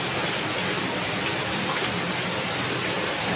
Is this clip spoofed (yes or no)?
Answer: no